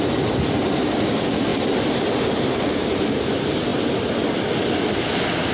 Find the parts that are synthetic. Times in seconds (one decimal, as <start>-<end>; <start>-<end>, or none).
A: 1.5-2.1

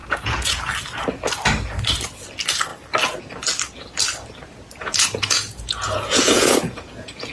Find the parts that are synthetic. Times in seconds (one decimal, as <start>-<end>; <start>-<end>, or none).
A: 0.0-0.6; 4.8-7.3

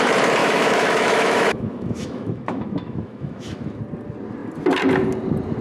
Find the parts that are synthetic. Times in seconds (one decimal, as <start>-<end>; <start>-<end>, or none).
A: 0.4-3.8

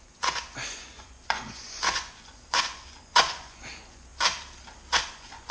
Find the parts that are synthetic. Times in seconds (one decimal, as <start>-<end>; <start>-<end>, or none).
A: 0.0-4.1; 5.0-5.5

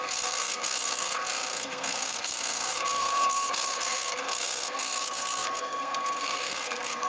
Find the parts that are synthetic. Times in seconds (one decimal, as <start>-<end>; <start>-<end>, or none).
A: 0.0-7.1